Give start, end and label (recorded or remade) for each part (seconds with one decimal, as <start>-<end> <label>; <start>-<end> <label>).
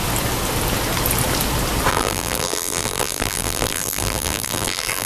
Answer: 0.0-1.9 recorded; 1.9-5.1 remade